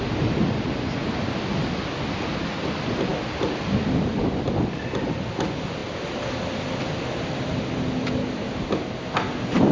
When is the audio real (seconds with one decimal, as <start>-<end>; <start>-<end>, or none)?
0.0-9.7